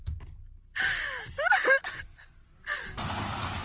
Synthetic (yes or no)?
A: no